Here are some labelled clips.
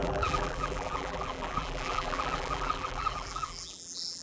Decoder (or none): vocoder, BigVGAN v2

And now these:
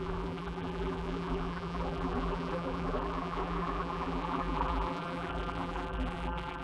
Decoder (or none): vocoder, BigVGAN v2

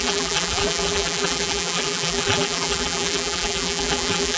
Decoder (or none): vocoder, BigVGAN v2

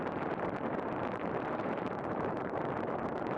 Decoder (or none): vocoder, BigVGAN v2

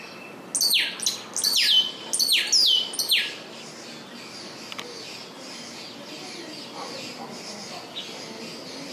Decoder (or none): none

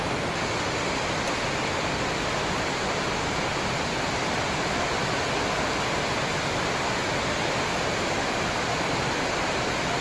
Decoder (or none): none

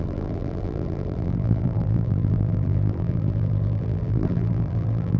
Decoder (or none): vocoder, BigVGAN v2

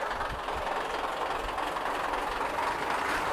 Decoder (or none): none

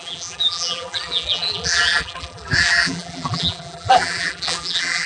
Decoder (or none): vocoder, BigVGAN v2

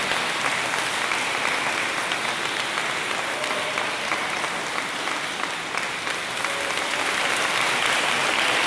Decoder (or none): none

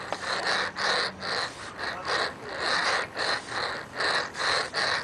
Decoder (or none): none